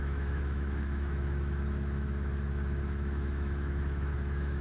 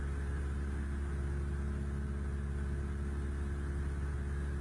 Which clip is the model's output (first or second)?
first